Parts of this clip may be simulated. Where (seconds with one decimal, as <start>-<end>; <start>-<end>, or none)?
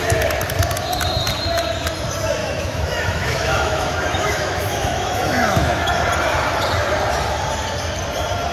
2.4-6.0